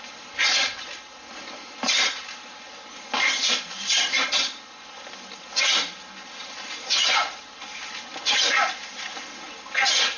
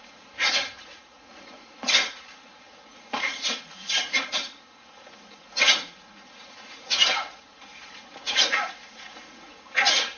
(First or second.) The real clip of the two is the first